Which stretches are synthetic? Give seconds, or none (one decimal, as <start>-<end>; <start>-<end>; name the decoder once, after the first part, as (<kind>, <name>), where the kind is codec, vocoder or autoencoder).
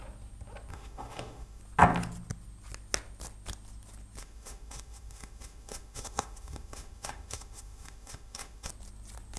0.7-1.6 (autoencoder, DAC-VAE); 4.2-8.7